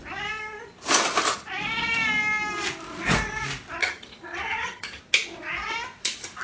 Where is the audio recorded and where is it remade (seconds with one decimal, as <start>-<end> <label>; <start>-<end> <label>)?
0.0-3.8 recorded; 3.8-5.0 remade; 5.0-6.4 recorded